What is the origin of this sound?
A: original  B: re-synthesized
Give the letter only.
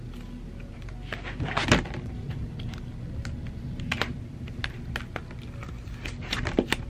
A